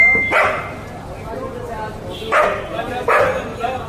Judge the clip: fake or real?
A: real